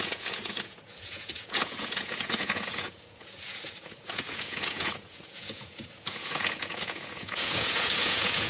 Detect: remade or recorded remade